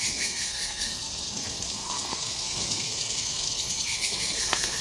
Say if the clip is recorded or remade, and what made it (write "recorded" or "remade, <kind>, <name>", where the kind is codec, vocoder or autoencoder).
remade, codec, SNAC